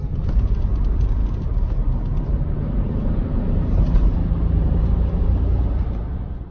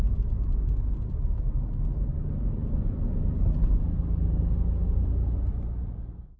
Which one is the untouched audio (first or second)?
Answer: second